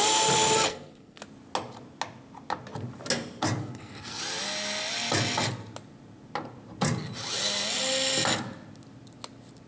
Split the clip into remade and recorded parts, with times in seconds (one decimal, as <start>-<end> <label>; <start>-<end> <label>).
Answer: 0.0-0.7 recorded; 0.7-1.2 remade; 1.2-3.6 recorded; 3.6-4.2 remade; 4.2-9.7 recorded